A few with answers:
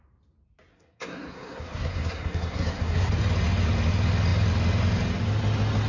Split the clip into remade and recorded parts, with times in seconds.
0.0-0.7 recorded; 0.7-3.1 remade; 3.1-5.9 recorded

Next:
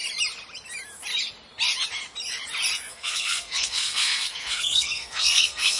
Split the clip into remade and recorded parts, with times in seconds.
0.0-2.9 recorded; 2.9-5.8 remade

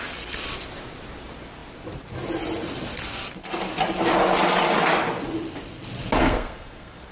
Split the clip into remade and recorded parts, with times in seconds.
0.0-6.2 recorded; 6.2-7.1 remade

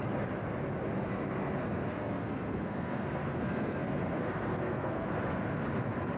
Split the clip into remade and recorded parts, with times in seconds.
0.0-1.6 recorded; 1.6-5.1 remade; 5.1-6.2 recorded

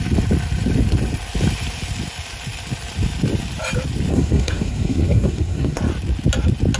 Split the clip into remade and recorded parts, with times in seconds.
0.0-4.1 recorded; 4.1-5.8 remade; 5.8-6.8 recorded

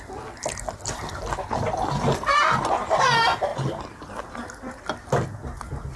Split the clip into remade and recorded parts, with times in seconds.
0.0-6.0 recorded

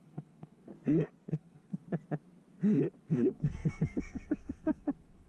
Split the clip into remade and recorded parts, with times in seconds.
0.0-0.7 remade; 0.7-1.3 recorded; 1.3-1.8 remade; 1.8-3.0 recorded; 3.0-5.3 remade